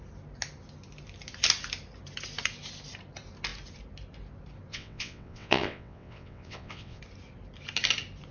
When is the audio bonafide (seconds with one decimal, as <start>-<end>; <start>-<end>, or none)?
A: 0.0-4.7; 7.0-8.3

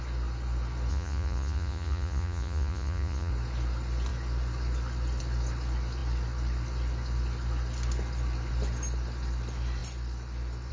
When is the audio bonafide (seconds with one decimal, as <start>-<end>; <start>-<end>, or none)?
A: 0.0-0.9; 3.3-10.7

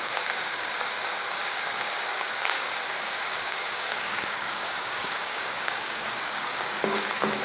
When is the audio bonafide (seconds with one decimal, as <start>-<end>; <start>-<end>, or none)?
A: none

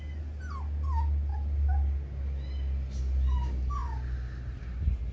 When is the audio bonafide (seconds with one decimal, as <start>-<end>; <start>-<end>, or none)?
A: 0.0-5.1

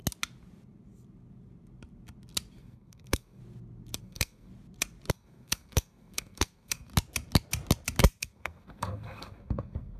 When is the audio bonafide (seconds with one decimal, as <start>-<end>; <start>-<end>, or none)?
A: 0.0-2.6; 3.4-4.0; 4.5-5.1; 6.9-8.2

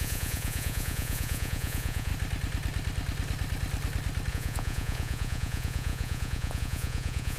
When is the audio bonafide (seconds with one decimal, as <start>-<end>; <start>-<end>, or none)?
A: 2.1-4.3